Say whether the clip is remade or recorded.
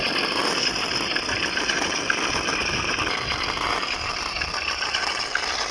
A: recorded